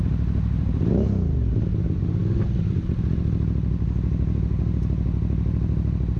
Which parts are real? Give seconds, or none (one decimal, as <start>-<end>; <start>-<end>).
0.0-6.2